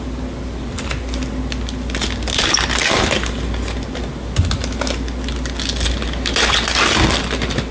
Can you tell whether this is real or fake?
real